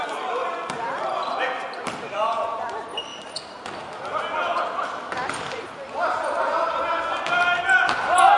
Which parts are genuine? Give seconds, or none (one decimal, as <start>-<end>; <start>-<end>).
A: 0.0-8.4